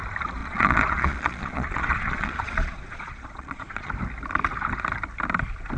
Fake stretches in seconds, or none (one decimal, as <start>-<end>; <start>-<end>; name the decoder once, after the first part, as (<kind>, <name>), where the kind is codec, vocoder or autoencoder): 0.4-3.9 (vocoder, Vocos)